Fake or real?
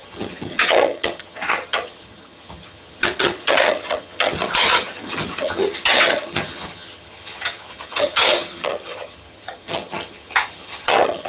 fake